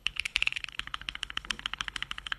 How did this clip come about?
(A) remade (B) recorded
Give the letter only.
A